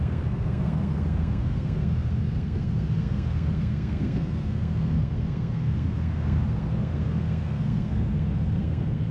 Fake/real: fake